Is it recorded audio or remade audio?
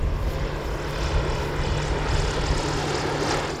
recorded